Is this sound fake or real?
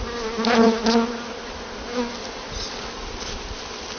real